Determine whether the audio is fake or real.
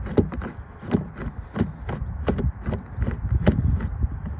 real